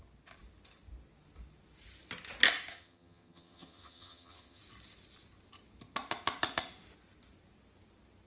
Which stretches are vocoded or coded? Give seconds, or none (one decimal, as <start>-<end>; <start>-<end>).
2.7-4.6